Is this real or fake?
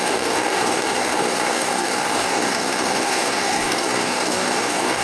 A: fake